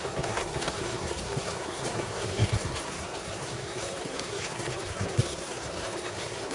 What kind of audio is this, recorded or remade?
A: remade